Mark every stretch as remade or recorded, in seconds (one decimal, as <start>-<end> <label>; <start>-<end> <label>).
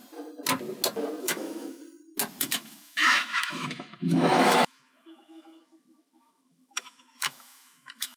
0.0-1.2 recorded; 1.2-1.8 remade; 1.8-2.4 recorded; 2.4-8.2 remade